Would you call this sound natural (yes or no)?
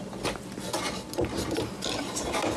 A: yes